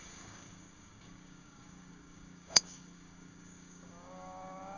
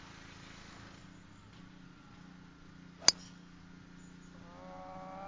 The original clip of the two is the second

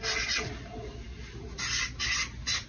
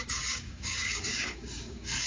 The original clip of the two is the first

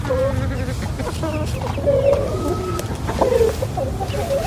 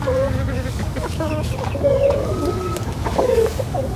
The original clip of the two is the first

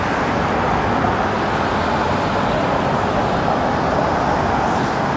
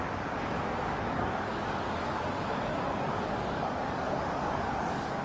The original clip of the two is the first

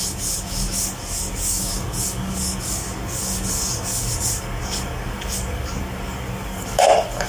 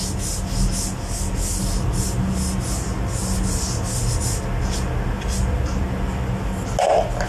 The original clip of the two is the second